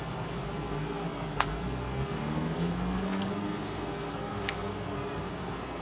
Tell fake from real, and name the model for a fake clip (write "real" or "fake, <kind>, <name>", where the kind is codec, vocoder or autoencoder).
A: fake, codec, SNAC